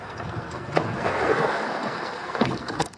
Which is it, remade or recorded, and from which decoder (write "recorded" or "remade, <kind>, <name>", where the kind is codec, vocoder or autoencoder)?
remade, codec, SNAC